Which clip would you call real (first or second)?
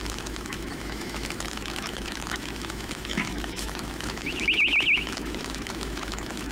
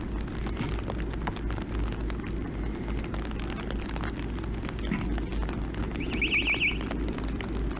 second